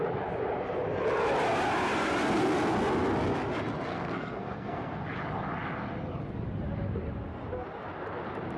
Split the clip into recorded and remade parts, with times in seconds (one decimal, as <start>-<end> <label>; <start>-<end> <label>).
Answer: 0.0-3.9 recorded; 3.9-5.0 remade; 5.0-8.6 recorded